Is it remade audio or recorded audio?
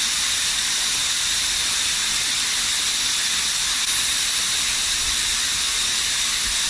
recorded